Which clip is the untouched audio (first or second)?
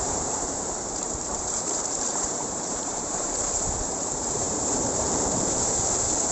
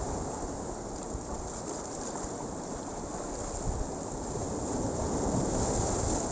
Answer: second